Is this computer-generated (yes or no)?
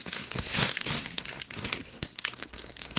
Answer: yes